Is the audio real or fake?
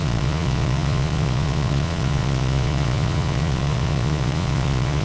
fake